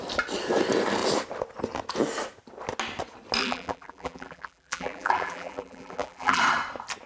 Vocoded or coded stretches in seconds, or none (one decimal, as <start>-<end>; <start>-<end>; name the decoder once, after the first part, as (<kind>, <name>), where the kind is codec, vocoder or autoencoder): 3.4-6.4 (vocoder, BigVGAN v2)